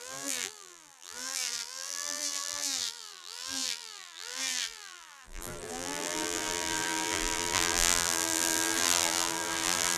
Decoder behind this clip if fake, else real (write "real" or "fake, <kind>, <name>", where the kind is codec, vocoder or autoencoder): fake, vocoder, BigVGAN v2